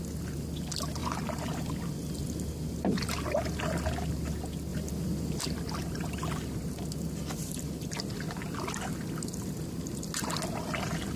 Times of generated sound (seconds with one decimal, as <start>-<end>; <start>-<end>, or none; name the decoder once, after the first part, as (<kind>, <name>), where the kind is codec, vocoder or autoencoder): none